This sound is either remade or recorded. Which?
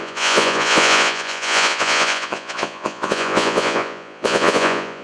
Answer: remade